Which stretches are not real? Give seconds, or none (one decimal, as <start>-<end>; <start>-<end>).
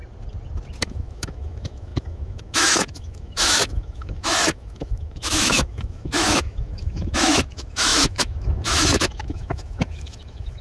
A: 0.8-10.6